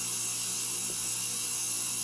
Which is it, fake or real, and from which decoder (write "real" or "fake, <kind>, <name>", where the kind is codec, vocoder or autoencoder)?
real